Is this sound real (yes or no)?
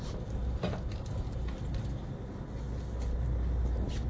yes